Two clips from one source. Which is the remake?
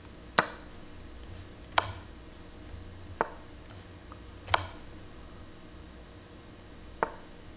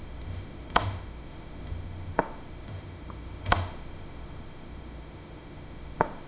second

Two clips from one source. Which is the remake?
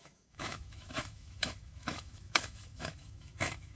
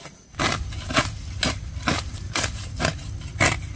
first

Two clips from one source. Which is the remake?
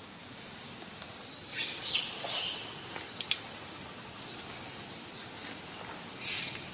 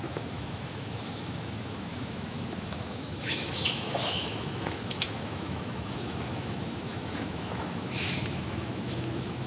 second